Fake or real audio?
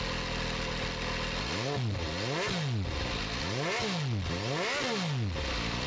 real